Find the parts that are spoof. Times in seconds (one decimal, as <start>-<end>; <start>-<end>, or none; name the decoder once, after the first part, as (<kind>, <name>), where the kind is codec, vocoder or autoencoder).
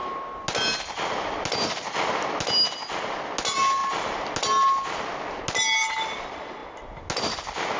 none